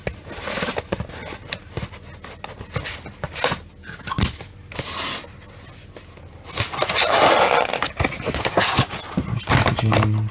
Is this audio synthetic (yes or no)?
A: no